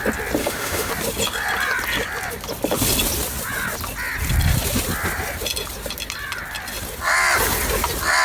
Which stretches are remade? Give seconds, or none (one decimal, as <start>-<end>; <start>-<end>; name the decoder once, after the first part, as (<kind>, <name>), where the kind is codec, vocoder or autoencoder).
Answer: 0.4-0.9 (autoencoder, DAC-VAE)